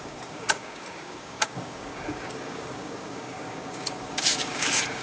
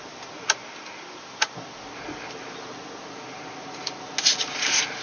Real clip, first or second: second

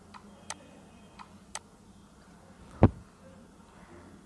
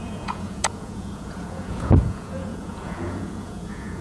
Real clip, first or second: first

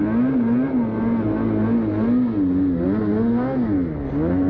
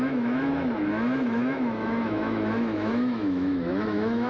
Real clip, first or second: first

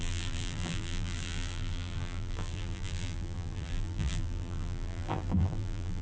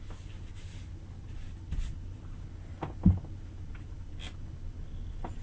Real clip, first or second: second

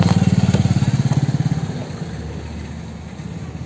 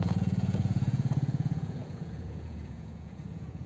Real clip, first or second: first